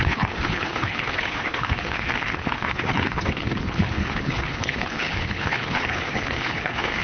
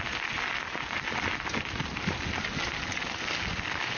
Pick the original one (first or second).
second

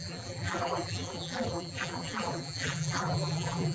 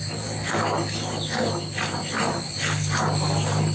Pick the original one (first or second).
second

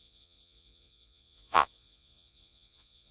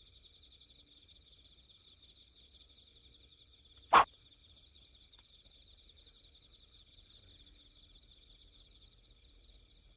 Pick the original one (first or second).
second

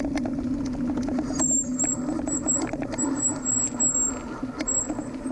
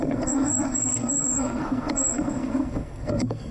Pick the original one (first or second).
first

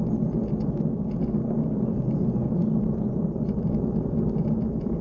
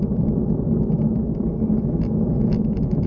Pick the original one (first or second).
first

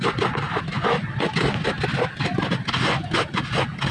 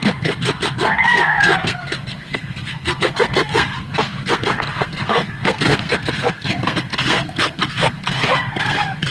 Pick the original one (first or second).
first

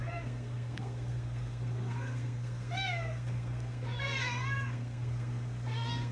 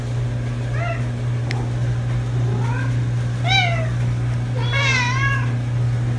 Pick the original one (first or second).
second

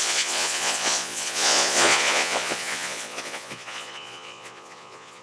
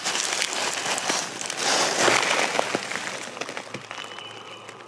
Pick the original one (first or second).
second